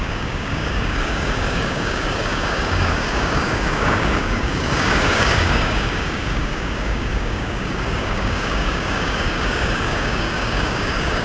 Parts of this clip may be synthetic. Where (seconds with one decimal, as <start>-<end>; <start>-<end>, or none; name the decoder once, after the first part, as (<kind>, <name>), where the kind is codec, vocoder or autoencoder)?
0.0-11.2 (codec, DAC)